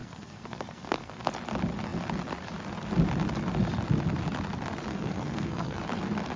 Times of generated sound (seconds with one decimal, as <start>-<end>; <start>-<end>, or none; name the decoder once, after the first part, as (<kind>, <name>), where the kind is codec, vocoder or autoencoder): 0.0-1.3 (codec, SNAC); 4.9-5.8